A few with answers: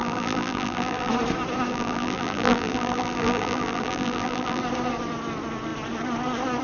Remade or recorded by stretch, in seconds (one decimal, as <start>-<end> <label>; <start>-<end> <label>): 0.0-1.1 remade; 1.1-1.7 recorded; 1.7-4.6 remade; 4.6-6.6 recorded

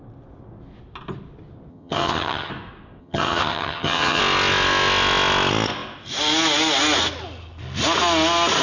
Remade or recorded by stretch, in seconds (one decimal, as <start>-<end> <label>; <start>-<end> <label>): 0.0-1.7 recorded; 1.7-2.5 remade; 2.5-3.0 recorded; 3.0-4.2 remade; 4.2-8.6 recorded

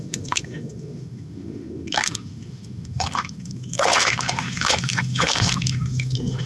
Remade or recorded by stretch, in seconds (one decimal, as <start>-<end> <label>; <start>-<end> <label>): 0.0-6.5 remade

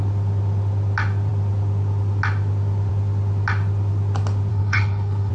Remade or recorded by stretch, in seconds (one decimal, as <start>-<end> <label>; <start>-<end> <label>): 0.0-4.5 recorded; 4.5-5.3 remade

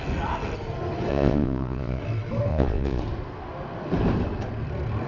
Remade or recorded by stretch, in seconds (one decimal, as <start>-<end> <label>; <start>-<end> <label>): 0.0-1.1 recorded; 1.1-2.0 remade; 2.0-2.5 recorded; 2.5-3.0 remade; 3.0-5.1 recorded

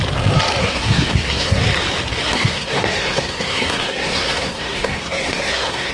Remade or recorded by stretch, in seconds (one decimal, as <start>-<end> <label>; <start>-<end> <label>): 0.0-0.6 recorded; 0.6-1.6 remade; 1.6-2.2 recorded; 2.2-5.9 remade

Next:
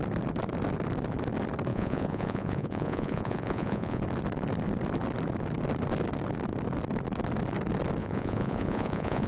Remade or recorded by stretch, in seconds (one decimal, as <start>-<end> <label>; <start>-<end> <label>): 0.0-1.7 recorded; 1.7-4.0 remade; 4.0-8.0 recorded; 8.0-9.3 remade